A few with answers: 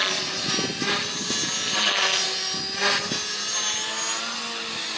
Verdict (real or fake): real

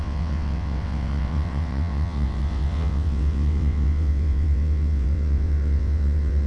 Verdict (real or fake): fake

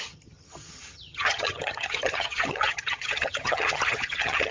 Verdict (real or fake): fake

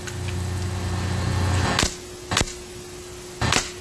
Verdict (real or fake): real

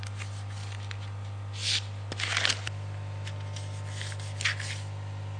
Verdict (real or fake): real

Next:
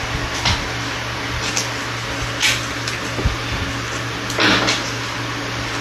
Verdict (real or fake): real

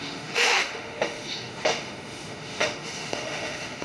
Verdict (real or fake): fake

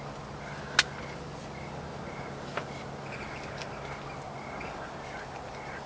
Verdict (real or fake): real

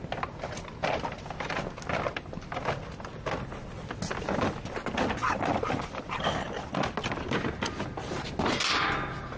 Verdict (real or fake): real